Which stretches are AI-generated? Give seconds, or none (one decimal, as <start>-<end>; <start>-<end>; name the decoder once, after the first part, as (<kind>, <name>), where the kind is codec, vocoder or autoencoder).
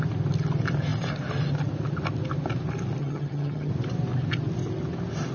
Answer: 3.0-3.7 (vocoder, HiFi-GAN)